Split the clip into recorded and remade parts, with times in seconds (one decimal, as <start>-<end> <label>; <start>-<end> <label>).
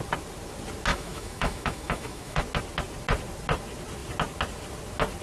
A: 0.0-0.9 recorded; 0.9-2.4 remade; 2.4-5.2 recorded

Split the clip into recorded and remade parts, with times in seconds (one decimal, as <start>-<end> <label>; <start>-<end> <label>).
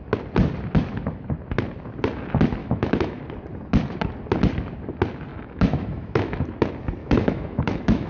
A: 0.0-2.6 recorded; 2.6-3.2 remade; 3.2-5.3 recorded; 5.3-6.4 remade; 6.4-7.0 recorded; 7.0-8.1 remade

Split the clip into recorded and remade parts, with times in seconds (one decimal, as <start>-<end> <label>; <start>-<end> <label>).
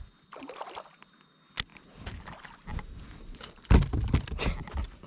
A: 0.0-5.1 recorded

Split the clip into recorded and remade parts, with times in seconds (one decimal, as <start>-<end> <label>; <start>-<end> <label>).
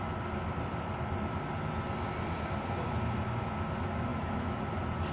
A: 0.0-4.1 recorded; 4.1-4.6 remade; 4.6-5.1 recorded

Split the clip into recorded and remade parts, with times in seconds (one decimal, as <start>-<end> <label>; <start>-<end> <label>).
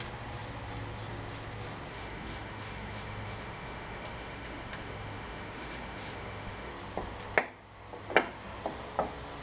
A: 0.0-1.9 recorded; 1.9-6.7 remade; 6.7-9.4 recorded